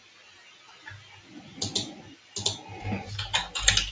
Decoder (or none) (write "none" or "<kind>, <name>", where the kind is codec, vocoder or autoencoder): none